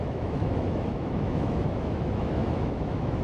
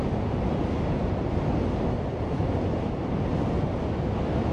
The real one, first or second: second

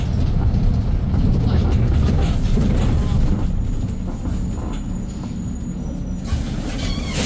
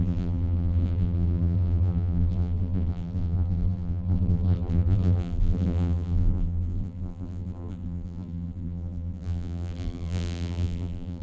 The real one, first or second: first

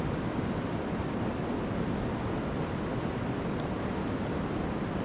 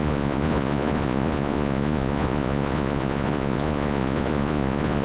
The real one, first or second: first